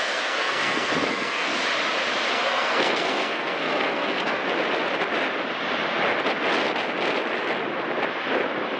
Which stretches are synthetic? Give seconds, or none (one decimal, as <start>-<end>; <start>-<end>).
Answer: 0.0-1.5; 2.3-4.4